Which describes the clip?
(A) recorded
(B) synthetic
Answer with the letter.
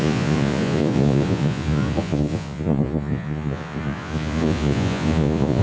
B